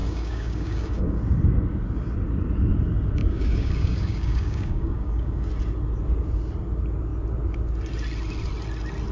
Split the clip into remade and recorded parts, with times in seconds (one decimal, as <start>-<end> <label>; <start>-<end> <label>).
0.0-1.2 remade; 1.2-3.2 recorded; 3.2-5.5 remade; 5.5-9.1 recorded